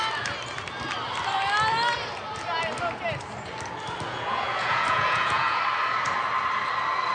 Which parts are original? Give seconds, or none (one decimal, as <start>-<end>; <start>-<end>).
0.0-4.1; 5.6-7.1